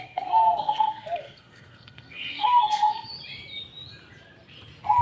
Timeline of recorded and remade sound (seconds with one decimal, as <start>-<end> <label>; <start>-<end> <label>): 0.0-3.1 remade; 3.1-5.0 recorded